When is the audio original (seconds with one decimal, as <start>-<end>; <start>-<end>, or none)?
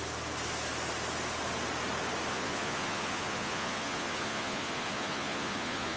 0.0-2.3